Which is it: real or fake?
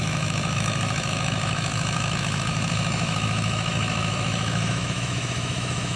fake